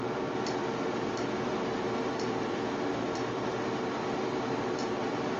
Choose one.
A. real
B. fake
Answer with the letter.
B